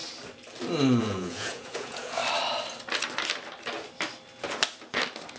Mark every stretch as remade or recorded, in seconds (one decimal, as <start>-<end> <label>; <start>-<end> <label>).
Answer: 0.0-1.0 recorded; 1.0-2.2 remade; 2.2-5.4 recorded